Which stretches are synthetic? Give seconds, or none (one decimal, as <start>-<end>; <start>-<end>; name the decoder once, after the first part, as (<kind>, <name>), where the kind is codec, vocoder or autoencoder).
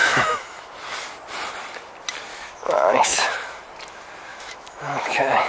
0.0-0.7 (autoencoder, DAC-VAE); 2.3-3.6; 4.3-5.5